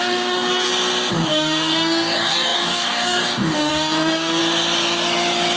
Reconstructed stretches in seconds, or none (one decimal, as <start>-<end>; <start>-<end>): 0.0-0.7; 1.3-4.4

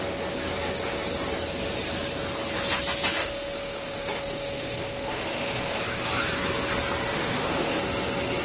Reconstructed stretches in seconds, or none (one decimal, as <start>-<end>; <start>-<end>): 3.2-5.8; 7.1-7.8

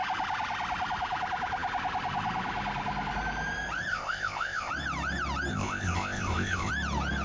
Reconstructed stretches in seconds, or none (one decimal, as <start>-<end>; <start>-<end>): 3.9-4.7; 5.5-6.7

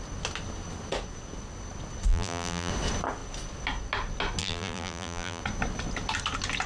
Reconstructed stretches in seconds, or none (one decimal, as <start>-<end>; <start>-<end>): 2.1-2.7; 4.4-5.4

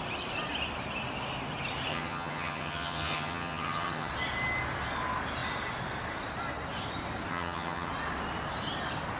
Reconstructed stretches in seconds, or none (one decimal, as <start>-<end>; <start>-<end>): 1.9-4.1; 7.3-7.9

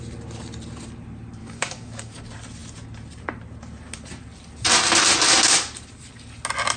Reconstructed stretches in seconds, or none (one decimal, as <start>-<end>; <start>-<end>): 1.4-2.2